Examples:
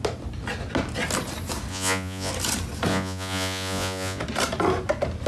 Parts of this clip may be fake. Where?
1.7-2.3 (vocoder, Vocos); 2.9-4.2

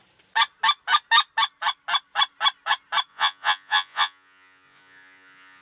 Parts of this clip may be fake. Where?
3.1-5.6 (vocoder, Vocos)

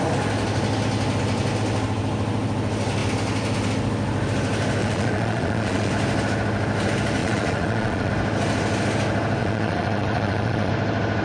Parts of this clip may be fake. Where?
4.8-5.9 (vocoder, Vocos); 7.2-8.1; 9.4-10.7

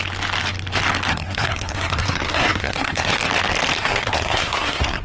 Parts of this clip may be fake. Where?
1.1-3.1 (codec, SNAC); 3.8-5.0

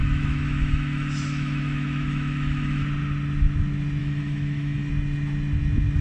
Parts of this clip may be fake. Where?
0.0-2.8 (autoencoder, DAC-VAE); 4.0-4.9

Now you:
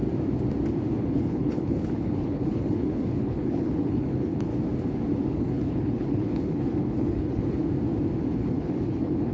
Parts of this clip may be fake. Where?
0.9-4.5 (codec, HILCodec); 5.3-7.6; 8.3-9.3

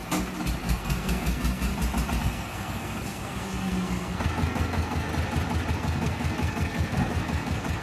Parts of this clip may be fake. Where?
0.6-1.7 (codec, SNAC); 2.2-5.1; 5.7-7.8